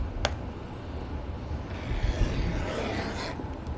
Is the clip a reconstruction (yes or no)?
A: no